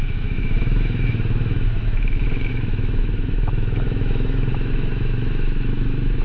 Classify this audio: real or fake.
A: fake